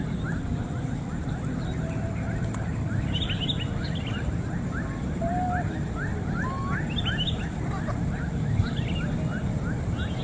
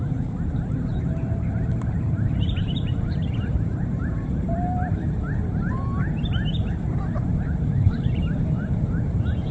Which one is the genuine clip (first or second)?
first